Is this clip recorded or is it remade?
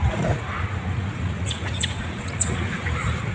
remade